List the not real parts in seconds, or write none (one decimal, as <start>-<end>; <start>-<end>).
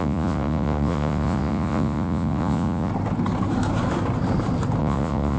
0.0-2.9; 4.8-5.4